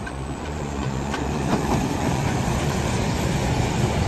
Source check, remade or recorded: remade